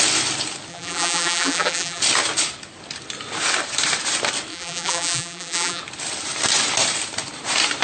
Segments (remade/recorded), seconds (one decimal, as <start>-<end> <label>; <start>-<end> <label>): 0.0-0.7 recorded; 0.7-2.0 remade; 2.0-4.5 recorded; 4.5-5.8 remade; 5.8-7.8 recorded